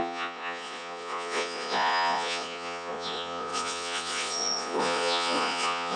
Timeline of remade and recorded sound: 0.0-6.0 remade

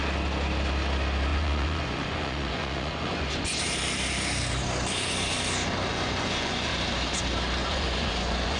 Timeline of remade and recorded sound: 0.0-1.3 recorded; 1.3-3.6 remade; 3.6-5.9 recorded; 5.9-6.7 remade; 6.7-7.6 recorded; 7.6-8.6 remade

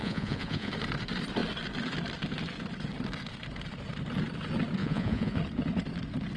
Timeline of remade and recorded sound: 0.0-0.7 remade; 0.7-4.8 recorded; 4.8-5.4 remade; 5.4-6.4 recorded

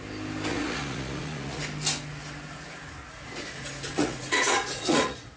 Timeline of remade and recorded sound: 0.0-0.5 recorded; 0.5-1.6 remade; 1.6-3.9 recorded; 3.9-5.4 remade